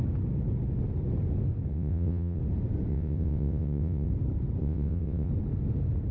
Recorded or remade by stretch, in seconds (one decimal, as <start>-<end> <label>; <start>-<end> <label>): 0.0-1.7 recorded; 1.7-2.4 remade; 2.4-2.9 recorded; 2.9-4.1 remade; 4.1-4.6 recorded; 4.6-5.3 remade; 5.3-6.1 recorded